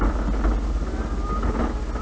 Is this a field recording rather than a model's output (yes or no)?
yes